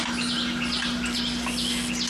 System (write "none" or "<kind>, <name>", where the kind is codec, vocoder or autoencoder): none